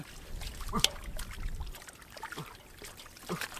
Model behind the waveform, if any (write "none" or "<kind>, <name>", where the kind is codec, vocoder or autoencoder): none